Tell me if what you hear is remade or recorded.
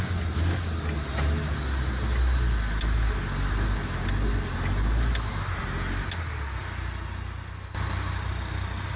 recorded